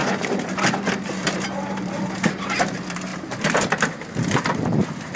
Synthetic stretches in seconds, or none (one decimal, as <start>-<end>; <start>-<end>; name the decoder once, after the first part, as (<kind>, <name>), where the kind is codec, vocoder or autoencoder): 0.0-5.2 (vocoder, BigVGAN v2)